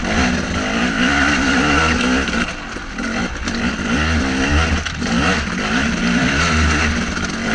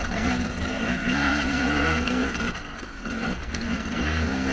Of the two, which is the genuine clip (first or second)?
first